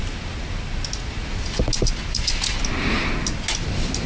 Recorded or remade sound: recorded